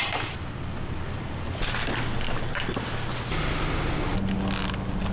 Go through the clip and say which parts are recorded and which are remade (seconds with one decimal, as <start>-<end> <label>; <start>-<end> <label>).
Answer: 0.0-5.1 recorded